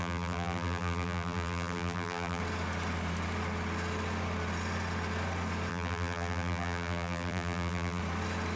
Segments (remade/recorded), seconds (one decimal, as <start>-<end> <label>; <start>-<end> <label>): 0.0-2.4 remade; 2.4-5.7 recorded; 5.7-8.0 remade; 8.0-8.6 recorded